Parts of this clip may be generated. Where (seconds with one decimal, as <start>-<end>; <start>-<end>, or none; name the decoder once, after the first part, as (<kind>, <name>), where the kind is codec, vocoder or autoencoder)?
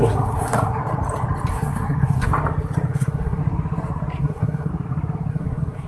0.0-0.8 (codec, SNAC); 1.5-2.3; 2.9-3.4; 4.2-4.7; 5.3-5.9